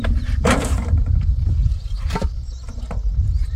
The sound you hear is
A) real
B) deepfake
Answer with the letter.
B